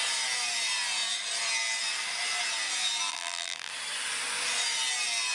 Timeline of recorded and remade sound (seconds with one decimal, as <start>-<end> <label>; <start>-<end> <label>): 0.0-3.1 recorded; 3.1-3.7 remade; 3.7-5.3 recorded